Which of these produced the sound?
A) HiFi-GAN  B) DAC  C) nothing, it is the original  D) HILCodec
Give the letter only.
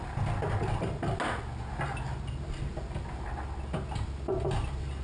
C